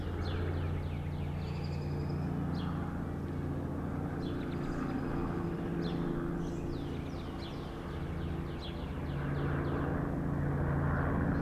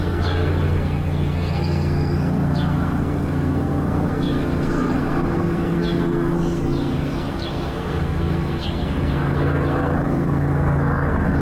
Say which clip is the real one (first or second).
first